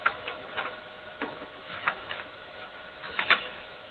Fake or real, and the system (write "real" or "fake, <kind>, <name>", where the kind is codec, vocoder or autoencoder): fake, autoencoder, DAC-VAE